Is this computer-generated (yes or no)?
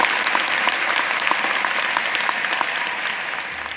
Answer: no